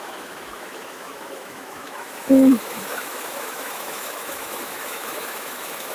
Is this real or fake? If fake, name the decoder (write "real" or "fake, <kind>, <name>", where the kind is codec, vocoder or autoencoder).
fake, autoencoder, DAC-VAE